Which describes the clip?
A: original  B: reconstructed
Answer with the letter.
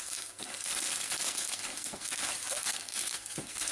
B